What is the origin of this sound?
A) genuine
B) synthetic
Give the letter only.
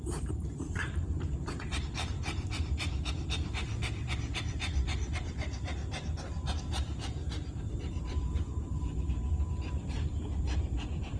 B